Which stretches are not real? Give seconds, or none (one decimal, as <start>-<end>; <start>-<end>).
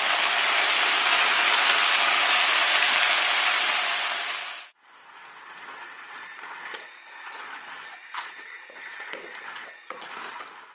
5.0-10.1